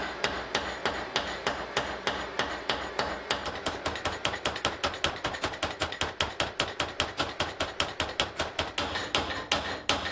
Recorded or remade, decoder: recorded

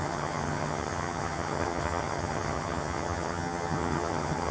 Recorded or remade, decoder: remade, vocoder, HiFi-GAN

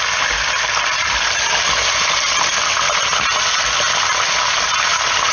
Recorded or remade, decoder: recorded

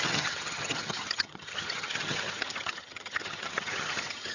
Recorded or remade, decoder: remade, vocoder, HiFi-GAN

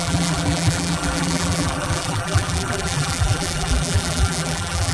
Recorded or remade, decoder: remade, vocoder, BigVGAN v2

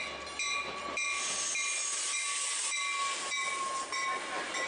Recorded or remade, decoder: recorded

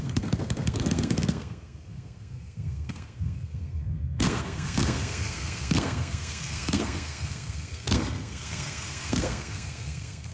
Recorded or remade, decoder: remade, codec, SNAC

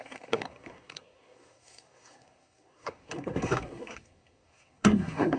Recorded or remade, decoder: remade, codec, SNAC